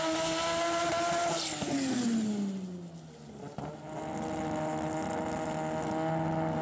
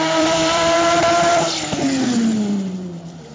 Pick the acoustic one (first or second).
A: first